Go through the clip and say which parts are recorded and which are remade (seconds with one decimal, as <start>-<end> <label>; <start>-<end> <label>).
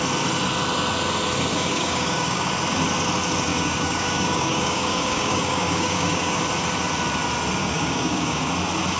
0.0-1.5 recorded; 1.5-2.5 remade; 2.5-3.5 recorded; 3.5-6.4 remade; 6.4-7.6 recorded; 7.6-8.5 remade; 8.5-9.0 recorded